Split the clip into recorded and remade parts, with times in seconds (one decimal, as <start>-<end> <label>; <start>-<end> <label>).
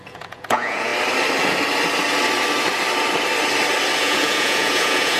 0.0-0.9 remade; 0.9-4.0 recorded; 4.0-5.2 remade